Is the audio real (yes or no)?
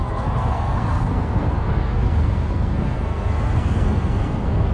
no